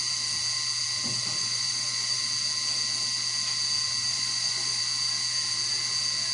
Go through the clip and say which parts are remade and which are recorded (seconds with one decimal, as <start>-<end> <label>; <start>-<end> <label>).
0.0-1.4 recorded; 1.4-2.2 remade; 2.2-4.1 recorded; 4.1-4.8 remade; 4.8-6.3 recorded